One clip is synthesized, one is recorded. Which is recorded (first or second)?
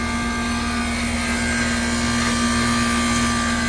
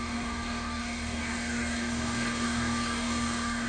first